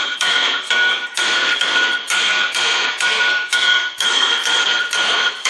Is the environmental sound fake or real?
fake